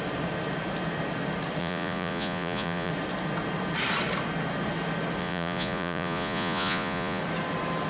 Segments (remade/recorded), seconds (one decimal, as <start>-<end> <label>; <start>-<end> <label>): 0.0-1.6 recorded; 1.6-2.9 remade; 2.9-5.2 recorded; 5.2-7.2 remade; 7.2-7.9 recorded